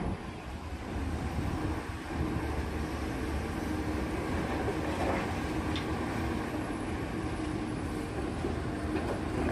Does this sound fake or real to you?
real